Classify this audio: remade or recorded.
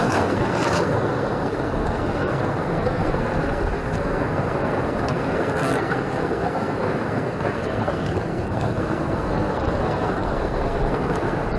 remade